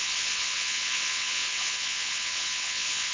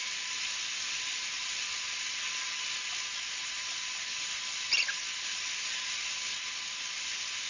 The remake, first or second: first